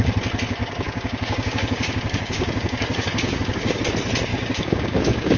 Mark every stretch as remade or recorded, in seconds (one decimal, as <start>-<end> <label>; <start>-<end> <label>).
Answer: 0.0-0.6 recorded; 0.6-3.8 remade; 3.8-4.3 recorded; 4.3-5.4 remade

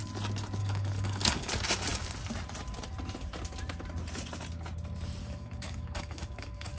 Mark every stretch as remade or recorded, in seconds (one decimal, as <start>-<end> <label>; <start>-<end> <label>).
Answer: 0.0-0.6 recorded; 0.6-1.5 remade; 1.5-5.2 recorded; 5.2-6.8 remade

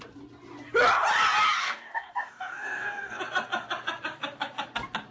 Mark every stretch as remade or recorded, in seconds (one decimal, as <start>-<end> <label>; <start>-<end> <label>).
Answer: 0.0-1.6 recorded; 1.6-3.2 remade; 3.2-5.1 recorded

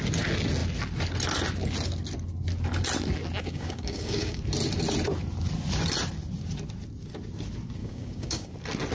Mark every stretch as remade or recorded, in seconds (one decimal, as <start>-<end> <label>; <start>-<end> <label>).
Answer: 0.0-3.4 recorded; 3.4-4.4 remade; 4.4-7.8 recorded; 7.8-8.5 remade; 8.5-8.9 recorded